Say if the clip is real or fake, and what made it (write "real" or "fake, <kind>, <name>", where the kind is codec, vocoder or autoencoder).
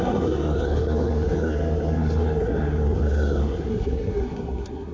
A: fake, codec, SNAC